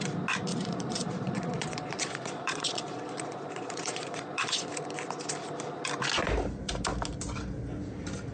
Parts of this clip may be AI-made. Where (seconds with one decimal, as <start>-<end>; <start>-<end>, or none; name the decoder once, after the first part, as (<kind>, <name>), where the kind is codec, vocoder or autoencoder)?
0.5-4.7 (vocoder, Vocos)